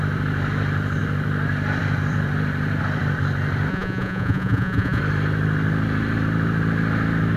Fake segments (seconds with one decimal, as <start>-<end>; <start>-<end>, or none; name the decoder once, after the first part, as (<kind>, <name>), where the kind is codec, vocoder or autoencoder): 3.7-5.0 (vocoder, Vocos)